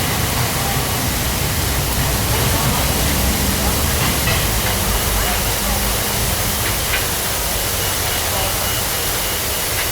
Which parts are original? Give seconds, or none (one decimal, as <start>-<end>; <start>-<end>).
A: 0.0-9.9